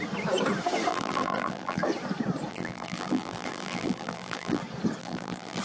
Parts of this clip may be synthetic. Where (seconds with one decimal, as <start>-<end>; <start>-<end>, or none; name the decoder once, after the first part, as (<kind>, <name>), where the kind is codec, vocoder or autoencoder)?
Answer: 0.9-1.8 (vocoder, BigVGAN v2); 2.5-4.6; 5.0-5.6